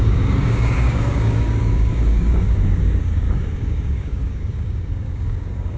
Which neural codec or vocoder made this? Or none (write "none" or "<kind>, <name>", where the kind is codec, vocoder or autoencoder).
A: codec, DAC